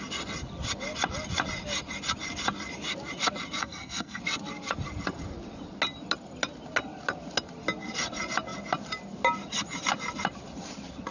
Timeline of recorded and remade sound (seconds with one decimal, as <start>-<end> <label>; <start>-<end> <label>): 0.0-3.6 recorded; 3.6-4.2 remade; 4.2-11.1 recorded